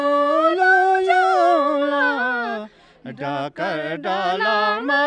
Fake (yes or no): no